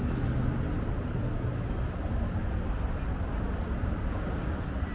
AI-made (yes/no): no